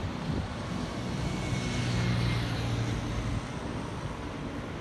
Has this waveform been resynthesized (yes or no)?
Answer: no